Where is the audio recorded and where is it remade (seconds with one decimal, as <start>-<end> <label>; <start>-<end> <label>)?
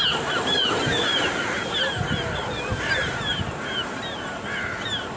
0.0-5.2 recorded